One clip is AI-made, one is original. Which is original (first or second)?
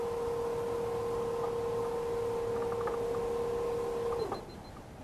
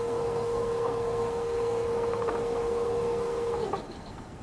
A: first